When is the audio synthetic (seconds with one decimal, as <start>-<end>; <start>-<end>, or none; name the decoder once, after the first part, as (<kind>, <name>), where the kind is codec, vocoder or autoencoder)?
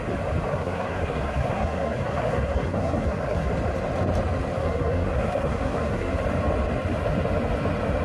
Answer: 0.5-3.5 (codec, SNAC); 4.6-6.2